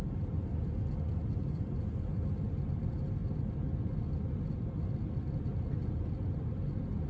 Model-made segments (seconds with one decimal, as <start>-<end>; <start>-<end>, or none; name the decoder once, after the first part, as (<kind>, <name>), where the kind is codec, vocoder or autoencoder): none